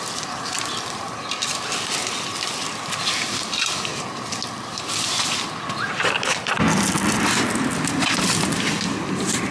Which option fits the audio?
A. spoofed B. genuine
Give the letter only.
B